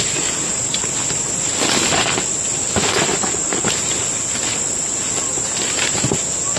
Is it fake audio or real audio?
real